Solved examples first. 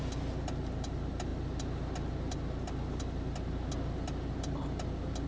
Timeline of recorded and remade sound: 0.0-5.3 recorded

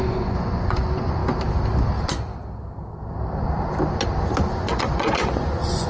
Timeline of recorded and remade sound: 0.0-1.2 remade; 1.2-4.5 recorded; 4.5-5.9 remade

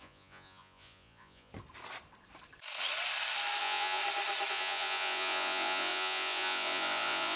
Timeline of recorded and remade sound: 0.0-1.5 remade; 1.5-3.6 recorded; 3.6-4.0 remade; 4.0-4.5 recorded; 4.5-7.4 remade

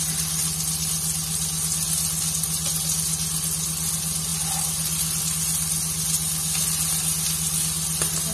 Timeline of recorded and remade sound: 0.0-8.3 recorded

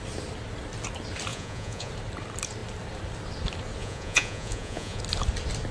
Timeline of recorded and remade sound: 0.0-1.3 recorded; 1.3-1.9 remade; 1.9-3.8 recorded; 3.8-5.0 remade; 5.0-5.7 recorded

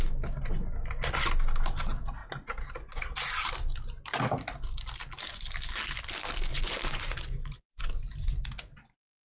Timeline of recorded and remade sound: 0.0-6.5 recorded; 6.5-7.9 remade; 7.9-9.2 recorded